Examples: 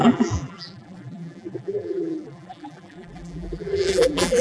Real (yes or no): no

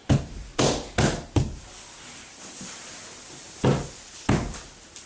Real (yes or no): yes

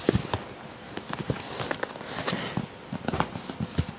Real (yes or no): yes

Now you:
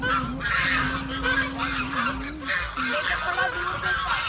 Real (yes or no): yes